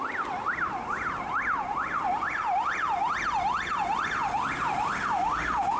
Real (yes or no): yes